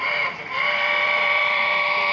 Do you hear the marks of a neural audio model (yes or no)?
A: yes